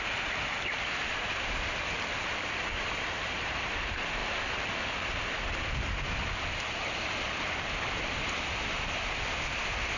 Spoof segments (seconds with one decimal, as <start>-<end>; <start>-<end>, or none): none